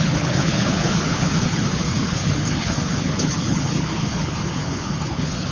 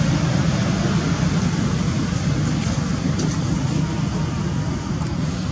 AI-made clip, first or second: first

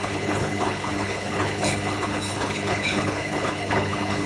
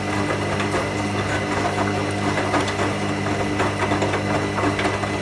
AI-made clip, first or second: first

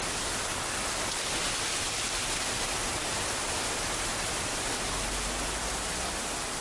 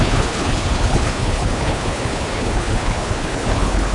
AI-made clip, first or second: second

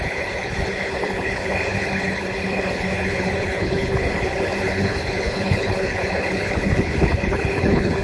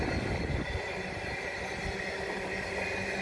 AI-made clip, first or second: first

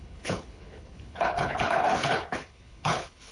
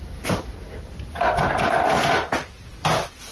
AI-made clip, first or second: first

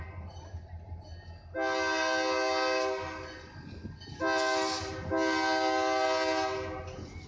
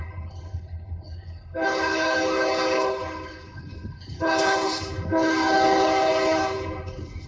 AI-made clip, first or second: second